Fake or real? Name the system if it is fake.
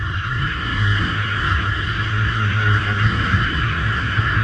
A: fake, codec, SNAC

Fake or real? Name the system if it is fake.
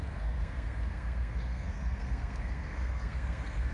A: fake, codec, SNAC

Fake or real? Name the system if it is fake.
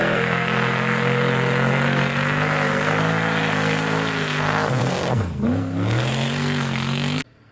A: fake, codec, SNAC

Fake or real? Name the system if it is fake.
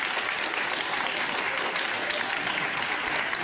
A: real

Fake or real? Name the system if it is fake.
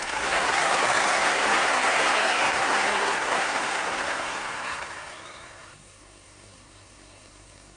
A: fake, codec, SNAC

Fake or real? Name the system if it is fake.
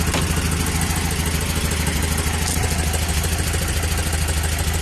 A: real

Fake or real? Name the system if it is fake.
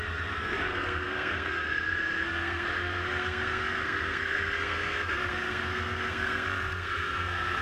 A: fake, codec, SNAC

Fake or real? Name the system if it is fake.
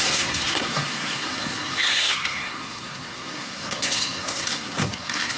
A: fake, codec, SNAC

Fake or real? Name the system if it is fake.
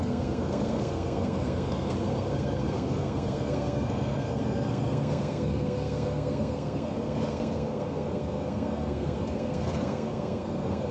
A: fake, codec, SNAC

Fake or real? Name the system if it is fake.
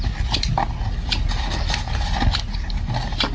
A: real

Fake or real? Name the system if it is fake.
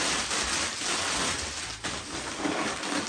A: real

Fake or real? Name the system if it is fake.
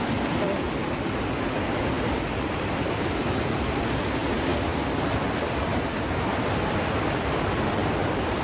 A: real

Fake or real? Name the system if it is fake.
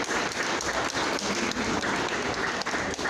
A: real